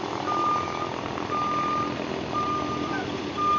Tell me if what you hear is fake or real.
real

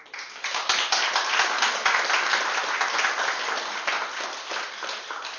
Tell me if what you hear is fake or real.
real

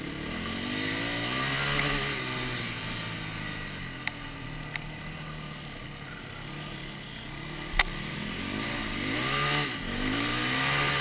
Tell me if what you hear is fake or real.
real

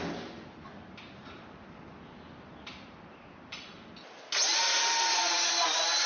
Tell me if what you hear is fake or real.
real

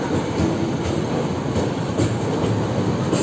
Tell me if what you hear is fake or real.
real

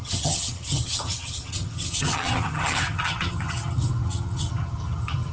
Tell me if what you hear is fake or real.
fake